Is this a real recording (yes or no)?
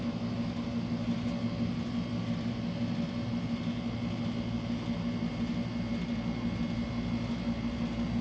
yes